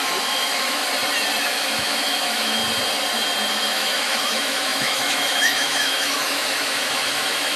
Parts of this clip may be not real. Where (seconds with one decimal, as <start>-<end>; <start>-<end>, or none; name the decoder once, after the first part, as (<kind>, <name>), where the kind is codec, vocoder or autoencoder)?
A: 0.0-0.8 (autoencoder, DAC-VAE); 1.4-2.6; 3.5-7.6